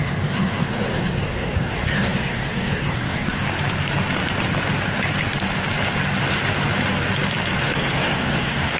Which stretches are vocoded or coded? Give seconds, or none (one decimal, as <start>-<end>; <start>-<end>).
0.0-3.4; 7.6-8.8